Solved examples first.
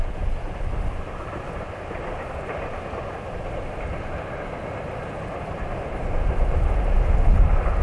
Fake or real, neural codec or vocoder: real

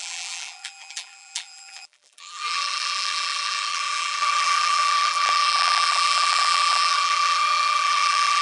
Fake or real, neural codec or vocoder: fake, vocoder, BigVGAN v2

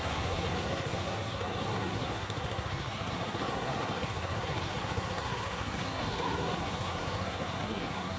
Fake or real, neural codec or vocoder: fake, codec, SNAC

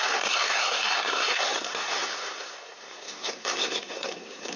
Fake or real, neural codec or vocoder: fake, codec, SNAC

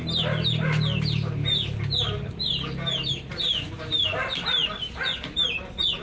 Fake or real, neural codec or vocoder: real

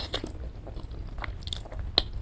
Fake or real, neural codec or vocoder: real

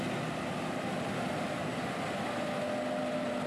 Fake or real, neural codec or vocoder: real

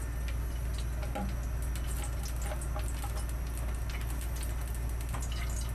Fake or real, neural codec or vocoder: real